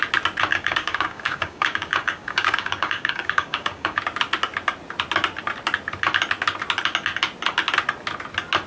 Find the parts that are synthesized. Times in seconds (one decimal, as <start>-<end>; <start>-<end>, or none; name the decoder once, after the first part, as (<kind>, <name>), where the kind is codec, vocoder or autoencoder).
0.5-4.0 (codec, DAC)